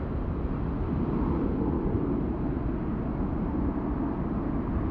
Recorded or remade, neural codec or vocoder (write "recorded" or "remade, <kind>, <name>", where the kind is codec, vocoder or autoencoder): recorded